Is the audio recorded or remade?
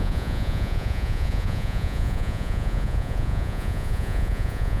remade